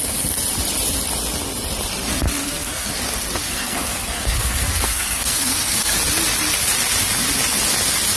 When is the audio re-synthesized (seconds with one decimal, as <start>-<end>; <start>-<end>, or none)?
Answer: 2.4-2.9; 3.4-5.9